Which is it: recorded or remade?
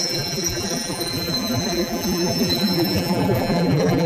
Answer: remade